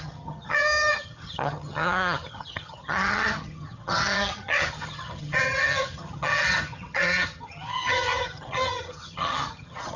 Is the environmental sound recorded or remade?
remade